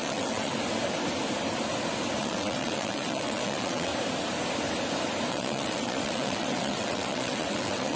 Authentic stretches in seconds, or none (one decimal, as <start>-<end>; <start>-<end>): 0.5-2.2; 3.9-5.3